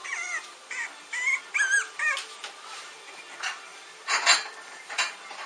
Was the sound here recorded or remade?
recorded